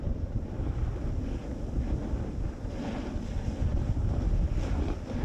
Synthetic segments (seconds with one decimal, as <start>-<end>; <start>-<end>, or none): 3.7-4.2